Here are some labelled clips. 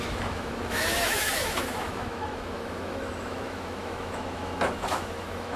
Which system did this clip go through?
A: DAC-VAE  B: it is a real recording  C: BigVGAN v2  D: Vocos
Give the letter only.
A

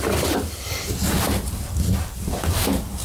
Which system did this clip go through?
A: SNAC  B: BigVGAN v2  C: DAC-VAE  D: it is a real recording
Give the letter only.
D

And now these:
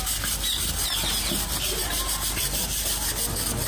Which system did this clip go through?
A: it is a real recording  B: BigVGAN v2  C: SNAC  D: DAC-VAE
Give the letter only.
A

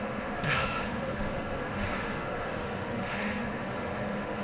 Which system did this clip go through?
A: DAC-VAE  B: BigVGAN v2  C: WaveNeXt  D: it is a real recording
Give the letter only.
A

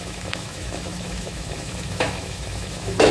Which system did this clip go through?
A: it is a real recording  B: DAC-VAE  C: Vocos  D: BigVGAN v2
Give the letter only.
B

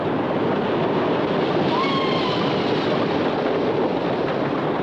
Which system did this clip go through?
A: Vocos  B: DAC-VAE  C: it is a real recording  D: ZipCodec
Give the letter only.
C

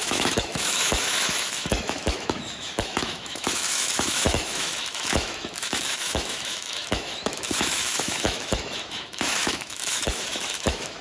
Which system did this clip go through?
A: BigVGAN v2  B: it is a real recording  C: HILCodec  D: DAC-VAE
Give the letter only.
D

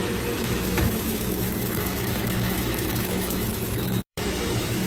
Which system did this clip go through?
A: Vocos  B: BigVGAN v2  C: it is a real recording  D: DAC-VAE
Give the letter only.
D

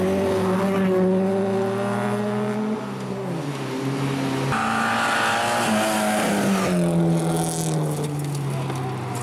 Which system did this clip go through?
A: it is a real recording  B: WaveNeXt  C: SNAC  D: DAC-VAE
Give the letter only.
A